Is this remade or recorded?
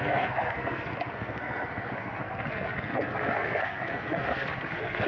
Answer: remade